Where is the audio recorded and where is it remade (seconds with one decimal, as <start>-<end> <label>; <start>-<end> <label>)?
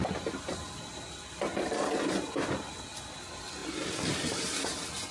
0.0-5.1 recorded